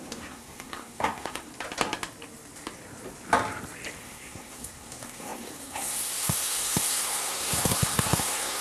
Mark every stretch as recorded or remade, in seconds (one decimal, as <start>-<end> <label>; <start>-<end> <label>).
0.0-1.5 remade; 1.5-4.0 recorded; 4.0-8.6 remade